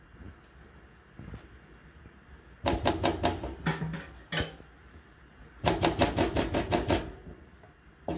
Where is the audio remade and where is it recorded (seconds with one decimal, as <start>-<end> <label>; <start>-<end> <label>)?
0.0-1.8 recorded; 1.8-2.9 remade; 2.9-4.8 recorded; 4.8-5.7 remade; 5.7-7.2 recorded; 7.2-7.7 remade; 7.7-8.2 recorded